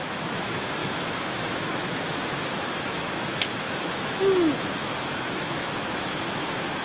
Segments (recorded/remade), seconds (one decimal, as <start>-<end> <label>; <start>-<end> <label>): 0.0-6.8 remade